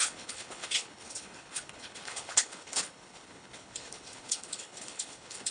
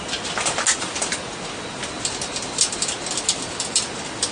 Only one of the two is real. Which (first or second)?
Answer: second